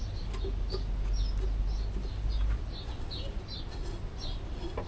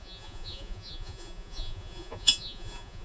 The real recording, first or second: first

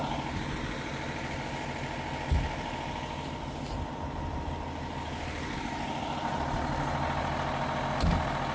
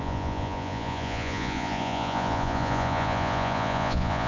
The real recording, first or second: first